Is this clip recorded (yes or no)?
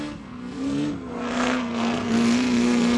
no